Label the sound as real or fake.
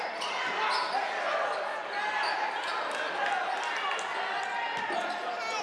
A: real